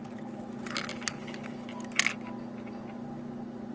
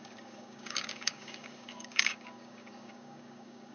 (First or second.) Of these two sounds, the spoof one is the second